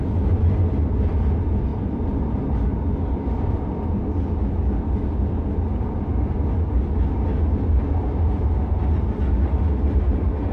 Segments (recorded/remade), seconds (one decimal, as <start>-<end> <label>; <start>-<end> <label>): 0.0-10.5 recorded